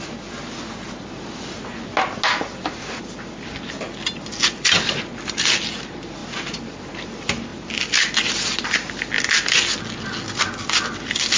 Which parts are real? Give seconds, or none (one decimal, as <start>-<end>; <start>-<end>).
0.0-11.4